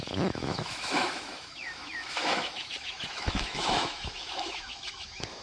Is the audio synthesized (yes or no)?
yes